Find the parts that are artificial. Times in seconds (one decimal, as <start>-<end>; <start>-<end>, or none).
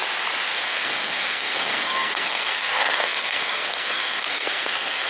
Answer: 0.5-5.1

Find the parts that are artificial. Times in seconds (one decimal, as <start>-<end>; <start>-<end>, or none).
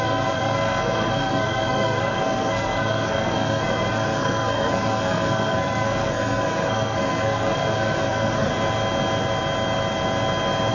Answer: 0.0-8.5